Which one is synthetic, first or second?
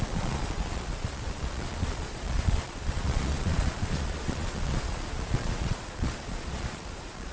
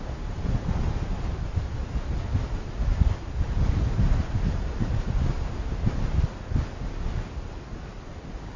first